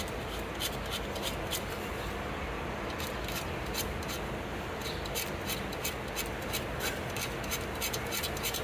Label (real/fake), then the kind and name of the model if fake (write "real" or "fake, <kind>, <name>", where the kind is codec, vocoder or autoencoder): real